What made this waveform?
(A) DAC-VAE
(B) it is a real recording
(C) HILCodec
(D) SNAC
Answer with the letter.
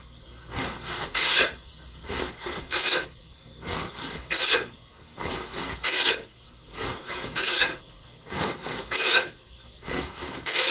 D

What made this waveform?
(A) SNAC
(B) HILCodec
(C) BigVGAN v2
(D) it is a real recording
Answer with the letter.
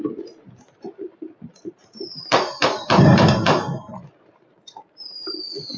C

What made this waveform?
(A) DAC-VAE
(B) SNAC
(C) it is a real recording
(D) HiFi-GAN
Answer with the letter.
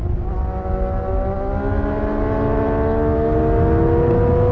C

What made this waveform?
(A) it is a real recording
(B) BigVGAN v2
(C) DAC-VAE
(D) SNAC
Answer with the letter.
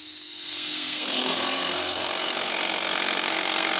D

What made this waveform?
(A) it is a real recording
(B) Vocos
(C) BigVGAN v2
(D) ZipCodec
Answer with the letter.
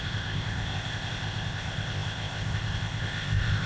D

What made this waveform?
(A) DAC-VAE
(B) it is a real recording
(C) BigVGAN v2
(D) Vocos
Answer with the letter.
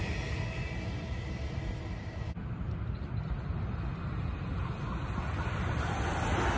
B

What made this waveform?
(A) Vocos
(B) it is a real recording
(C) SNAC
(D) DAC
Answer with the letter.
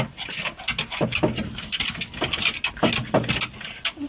B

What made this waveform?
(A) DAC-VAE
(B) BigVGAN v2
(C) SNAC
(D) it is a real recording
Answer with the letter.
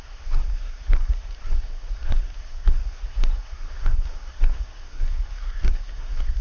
C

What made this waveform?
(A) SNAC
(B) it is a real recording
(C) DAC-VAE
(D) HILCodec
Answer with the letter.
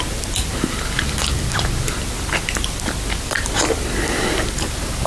B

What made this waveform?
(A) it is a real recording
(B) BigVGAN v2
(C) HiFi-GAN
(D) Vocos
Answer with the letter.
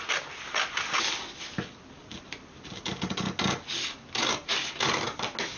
A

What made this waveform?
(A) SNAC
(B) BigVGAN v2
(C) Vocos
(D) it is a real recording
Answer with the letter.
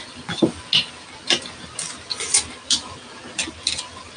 D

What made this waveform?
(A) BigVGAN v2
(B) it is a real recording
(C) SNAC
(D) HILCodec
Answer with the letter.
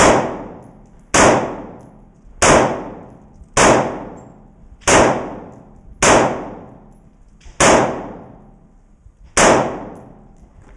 B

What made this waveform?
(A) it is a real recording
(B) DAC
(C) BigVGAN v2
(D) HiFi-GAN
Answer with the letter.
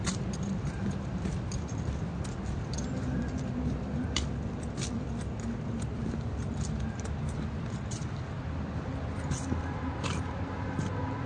C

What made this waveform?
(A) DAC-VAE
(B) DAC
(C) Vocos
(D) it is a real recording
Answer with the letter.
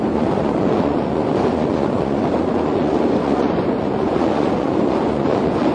C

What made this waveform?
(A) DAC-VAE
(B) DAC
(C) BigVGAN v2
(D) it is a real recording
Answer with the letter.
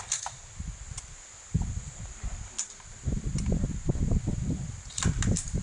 D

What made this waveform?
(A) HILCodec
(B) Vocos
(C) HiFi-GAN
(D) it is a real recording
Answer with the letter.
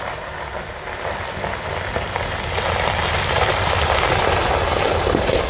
D